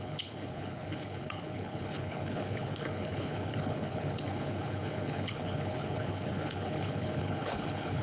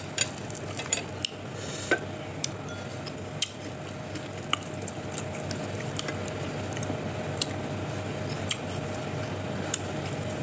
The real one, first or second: second